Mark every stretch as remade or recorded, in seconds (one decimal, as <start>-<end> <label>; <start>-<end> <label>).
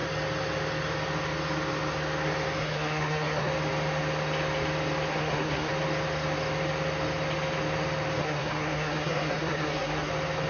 0.0-2.6 recorded; 2.6-3.5 remade; 3.5-5.1 recorded; 5.1-5.7 remade; 5.7-8.2 recorded; 8.2-10.1 remade; 10.1-10.5 recorded